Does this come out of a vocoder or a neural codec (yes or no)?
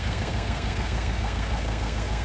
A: yes